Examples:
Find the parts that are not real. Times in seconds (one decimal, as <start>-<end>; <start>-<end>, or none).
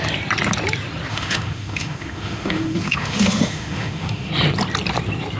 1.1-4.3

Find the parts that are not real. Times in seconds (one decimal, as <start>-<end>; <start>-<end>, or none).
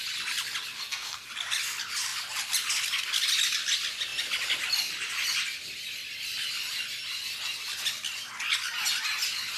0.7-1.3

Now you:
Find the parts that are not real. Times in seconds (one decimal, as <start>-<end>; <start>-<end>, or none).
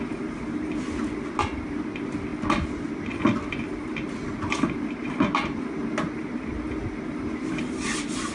none